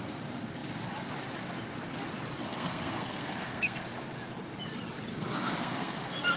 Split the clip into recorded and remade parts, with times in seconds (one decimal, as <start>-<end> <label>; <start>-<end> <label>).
0.0-2.5 recorded; 2.5-3.8 remade; 3.8-5.1 recorded; 5.1-6.4 remade